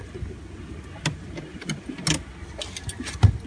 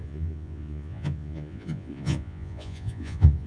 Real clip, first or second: first